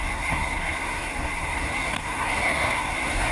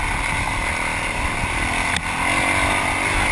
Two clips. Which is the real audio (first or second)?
second